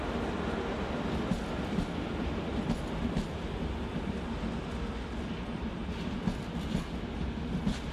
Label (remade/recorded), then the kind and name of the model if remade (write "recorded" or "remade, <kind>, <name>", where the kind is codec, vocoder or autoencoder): recorded